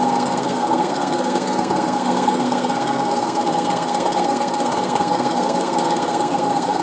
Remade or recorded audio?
remade